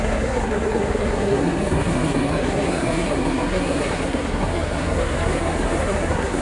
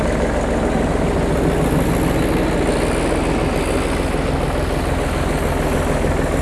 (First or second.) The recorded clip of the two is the second